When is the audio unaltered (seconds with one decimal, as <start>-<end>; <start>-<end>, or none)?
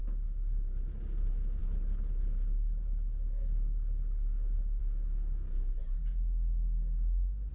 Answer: 0.9-1.6; 4.8-7.5